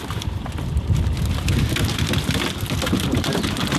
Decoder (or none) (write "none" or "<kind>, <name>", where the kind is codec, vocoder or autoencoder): none